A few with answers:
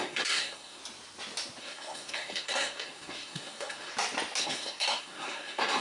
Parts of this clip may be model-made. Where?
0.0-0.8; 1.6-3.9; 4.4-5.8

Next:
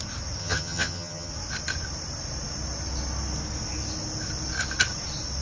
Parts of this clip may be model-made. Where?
0.4-1.3

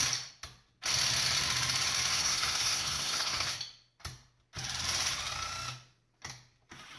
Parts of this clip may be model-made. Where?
2.1-3.6

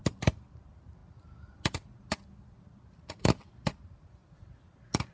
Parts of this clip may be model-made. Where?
none

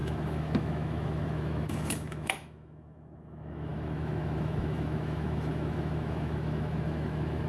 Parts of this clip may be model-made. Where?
0.0-7.5

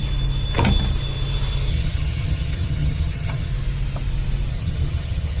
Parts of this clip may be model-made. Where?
1.7-3.5; 4.5-5.4

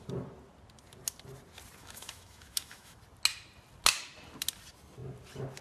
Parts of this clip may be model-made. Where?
1.8-3.0